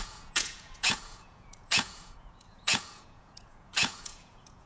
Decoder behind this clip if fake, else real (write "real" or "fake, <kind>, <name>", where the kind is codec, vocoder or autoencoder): fake, vocoder, Vocos